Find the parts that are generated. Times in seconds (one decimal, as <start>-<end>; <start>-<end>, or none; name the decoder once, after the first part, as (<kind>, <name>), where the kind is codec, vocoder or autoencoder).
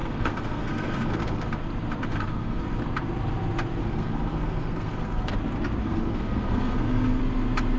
0.0-1.5 (codec, SNAC); 2.1-2.8; 3.8-5.3; 5.8-7.2